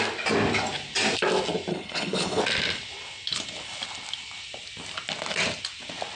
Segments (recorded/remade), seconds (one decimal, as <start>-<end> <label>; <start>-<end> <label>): 0.0-1.7 recorded; 1.7-2.4 remade; 2.4-6.2 recorded